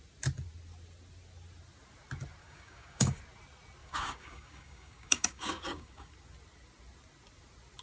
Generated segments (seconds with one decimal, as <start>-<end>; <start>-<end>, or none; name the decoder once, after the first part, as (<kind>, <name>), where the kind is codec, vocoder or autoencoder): 2.4-3.2 (codec, DAC); 3.8-6.1